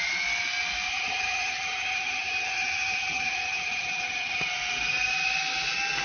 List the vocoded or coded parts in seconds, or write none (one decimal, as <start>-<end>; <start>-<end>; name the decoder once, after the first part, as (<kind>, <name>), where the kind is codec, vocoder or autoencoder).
0.9-4.5 (vocoder, HiFi-GAN)